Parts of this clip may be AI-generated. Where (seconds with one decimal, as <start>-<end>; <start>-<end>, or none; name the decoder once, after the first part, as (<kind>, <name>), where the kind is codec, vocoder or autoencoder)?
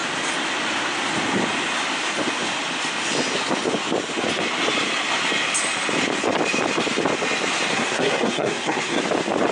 7.7-9.0 (codec, SNAC)